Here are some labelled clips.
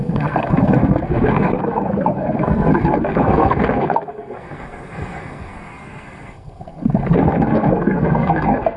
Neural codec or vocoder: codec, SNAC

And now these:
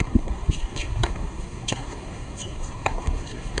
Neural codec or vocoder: codec, SNAC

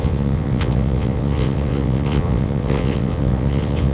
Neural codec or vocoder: vocoder, WaveNeXt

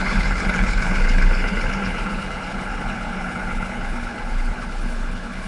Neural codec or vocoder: codec, HILCodec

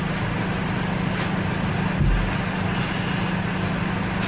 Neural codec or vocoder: none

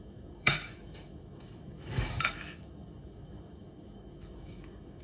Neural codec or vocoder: autoencoder, DAC-VAE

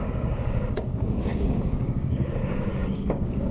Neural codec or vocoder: codec, DAC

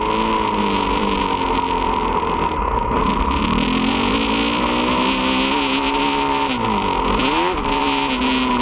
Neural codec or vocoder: none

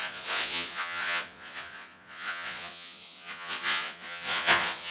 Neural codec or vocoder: vocoder, Vocos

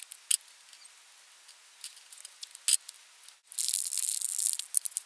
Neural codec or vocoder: none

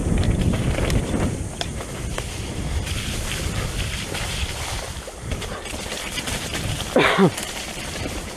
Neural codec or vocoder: vocoder, BigVGAN v2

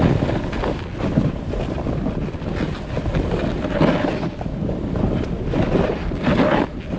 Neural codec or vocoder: none